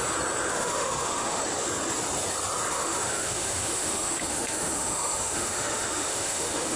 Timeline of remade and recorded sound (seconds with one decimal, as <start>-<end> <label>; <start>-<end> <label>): 0.0-0.5 recorded; 0.5-1.4 remade; 1.4-2.7 recorded; 2.7-6.8 remade